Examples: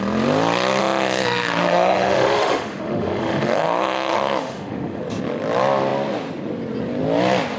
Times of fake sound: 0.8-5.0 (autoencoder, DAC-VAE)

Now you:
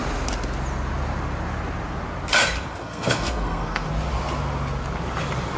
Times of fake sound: 2.8-3.9 (codec, SNAC)

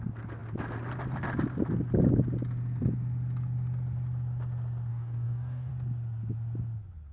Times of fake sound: 4.9-5.7 (codec, DAC)

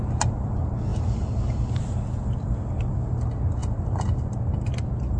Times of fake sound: none

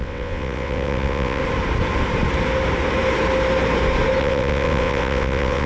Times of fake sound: 0.0-1.4 (vocoder, WaveNeXt); 4.2-5.7

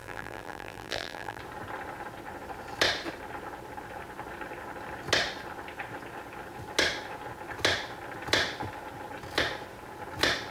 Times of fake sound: 0.0-1.4 (vocoder, BigVGAN v2)